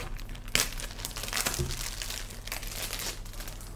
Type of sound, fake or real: real